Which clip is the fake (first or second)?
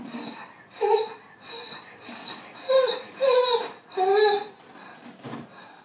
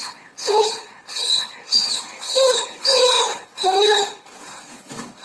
second